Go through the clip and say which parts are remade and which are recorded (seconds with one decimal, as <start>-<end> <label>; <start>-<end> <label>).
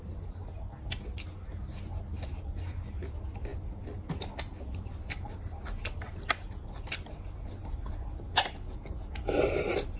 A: 0.0-10.0 recorded